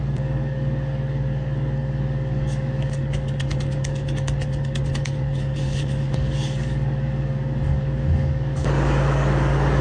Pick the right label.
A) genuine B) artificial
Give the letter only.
B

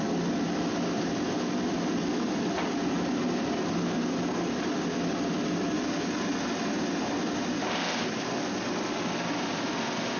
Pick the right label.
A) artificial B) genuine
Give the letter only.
B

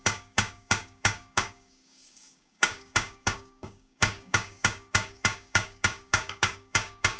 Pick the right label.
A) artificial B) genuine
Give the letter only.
A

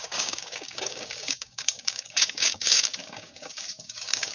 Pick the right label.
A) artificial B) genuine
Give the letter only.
A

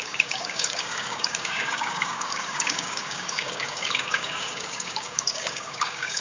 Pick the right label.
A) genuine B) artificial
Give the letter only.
B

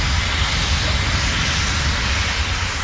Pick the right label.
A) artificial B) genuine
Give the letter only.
B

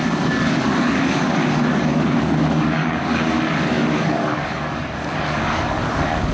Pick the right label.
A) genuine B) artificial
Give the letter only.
B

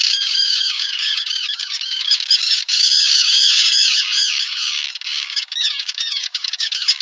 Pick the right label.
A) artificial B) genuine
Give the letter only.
A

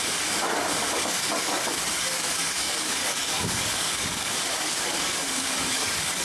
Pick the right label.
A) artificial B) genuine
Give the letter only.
A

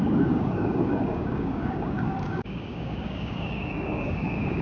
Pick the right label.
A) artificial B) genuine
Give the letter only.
A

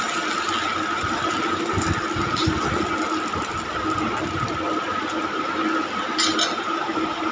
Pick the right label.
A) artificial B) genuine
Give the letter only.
B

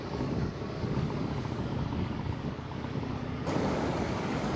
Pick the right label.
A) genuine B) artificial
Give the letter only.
B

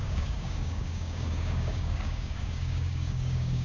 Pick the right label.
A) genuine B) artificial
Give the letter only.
B